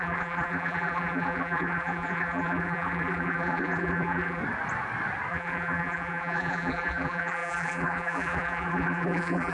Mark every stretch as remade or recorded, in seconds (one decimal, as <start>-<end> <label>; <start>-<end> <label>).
0.0-4.4 remade; 4.4-5.3 recorded; 5.3-9.5 remade

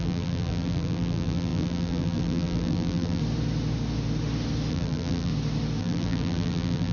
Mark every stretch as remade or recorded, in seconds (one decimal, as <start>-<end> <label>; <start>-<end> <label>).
0.0-3.2 remade; 3.2-4.7 recorded; 4.7-5.3 remade; 5.3-5.8 recorded; 5.8-6.9 remade